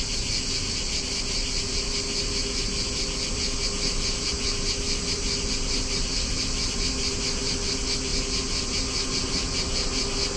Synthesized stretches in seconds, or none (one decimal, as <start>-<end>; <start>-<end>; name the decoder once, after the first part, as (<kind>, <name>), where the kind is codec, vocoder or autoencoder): none